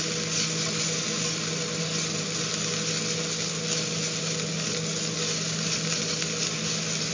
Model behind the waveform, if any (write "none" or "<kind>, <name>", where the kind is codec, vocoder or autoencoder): none